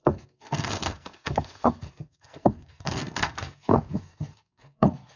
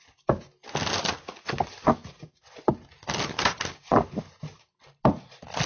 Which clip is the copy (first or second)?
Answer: first